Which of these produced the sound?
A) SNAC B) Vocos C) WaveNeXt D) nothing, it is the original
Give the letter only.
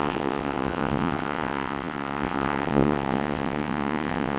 C